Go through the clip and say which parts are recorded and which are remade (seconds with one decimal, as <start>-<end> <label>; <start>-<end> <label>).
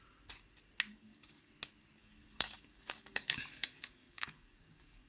0.0-0.9 recorded; 0.9-1.5 remade; 1.5-2.0 recorded; 2.0-5.1 remade